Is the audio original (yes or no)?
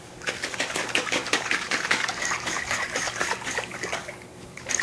no